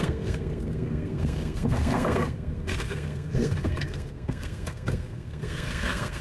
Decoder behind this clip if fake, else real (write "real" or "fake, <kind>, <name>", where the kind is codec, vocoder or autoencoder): fake, codec, SNAC